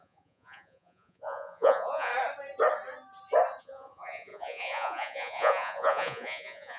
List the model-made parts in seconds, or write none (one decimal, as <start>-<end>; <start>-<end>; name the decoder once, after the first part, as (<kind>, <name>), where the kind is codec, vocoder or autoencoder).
0.0-2.1 (vocoder, Vocos); 3.6-6.8